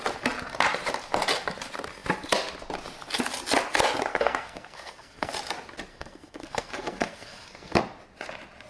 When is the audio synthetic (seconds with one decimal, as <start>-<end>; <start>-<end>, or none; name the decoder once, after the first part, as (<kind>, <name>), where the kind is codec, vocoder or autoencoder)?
4.1-5.3 (codec, SNAC); 5.9-7.8